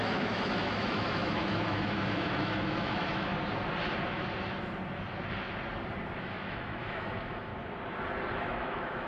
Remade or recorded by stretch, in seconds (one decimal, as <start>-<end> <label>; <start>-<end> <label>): 0.0-3.3 remade; 3.3-6.2 recorded; 6.2-7.5 remade; 7.5-8.4 recorded; 8.4-9.1 remade